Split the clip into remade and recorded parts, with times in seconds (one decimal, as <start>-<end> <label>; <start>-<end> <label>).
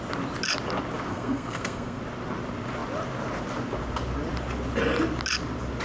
0.0-1.1 recorded; 1.1-2.0 remade; 2.0-5.8 recorded